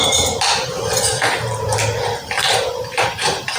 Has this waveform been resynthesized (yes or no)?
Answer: yes